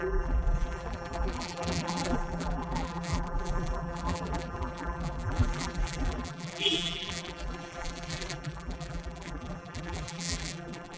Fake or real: fake